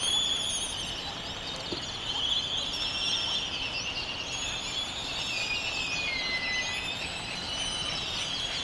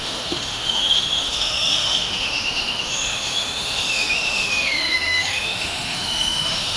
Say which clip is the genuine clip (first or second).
first